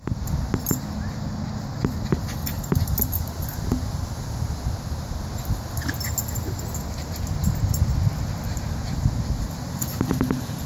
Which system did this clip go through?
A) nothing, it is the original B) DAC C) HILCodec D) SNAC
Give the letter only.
A